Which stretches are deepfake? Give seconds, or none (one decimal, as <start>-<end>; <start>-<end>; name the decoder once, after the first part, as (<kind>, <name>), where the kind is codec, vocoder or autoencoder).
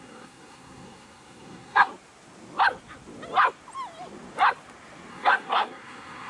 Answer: 0.0-1.9 (codec, SNAC); 5.1-6.3